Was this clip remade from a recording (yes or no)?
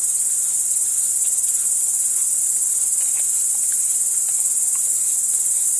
no